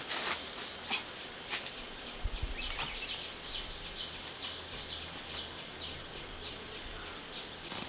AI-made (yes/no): no